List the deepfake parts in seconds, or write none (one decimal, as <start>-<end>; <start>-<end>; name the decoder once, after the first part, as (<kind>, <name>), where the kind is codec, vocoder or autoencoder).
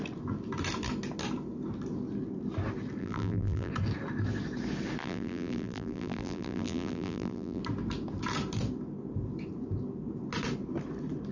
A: 3.0-3.7 (vocoder, BigVGAN v2); 5.0-7.6